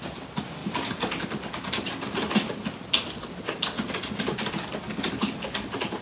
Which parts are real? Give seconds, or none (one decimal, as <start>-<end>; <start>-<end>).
0.0-6.0